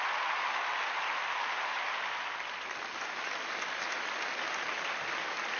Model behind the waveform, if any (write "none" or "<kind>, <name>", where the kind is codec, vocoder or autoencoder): none